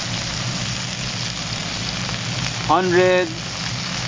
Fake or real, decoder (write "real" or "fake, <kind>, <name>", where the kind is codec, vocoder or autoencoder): real